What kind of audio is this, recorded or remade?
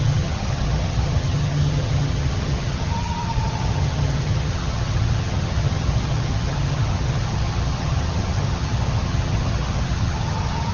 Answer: remade